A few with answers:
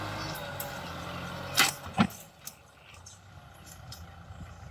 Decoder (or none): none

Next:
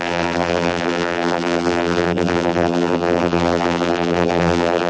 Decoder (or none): vocoder, BigVGAN v2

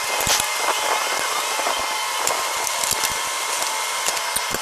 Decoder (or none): none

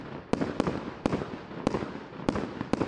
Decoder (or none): none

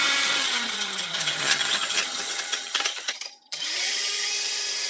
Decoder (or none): vocoder, HiFi-GAN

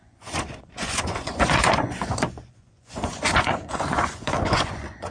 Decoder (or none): vocoder, Vocos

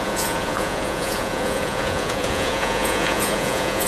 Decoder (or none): vocoder, Vocos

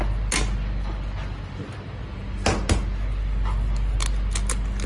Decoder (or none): none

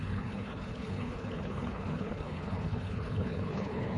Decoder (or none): codec, HILCodec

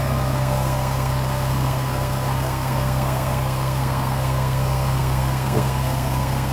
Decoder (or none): codec, SNAC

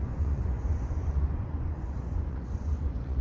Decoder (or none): vocoder, Vocos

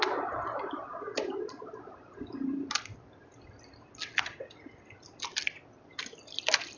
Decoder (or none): none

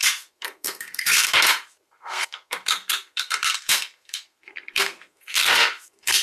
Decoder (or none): codec, SNAC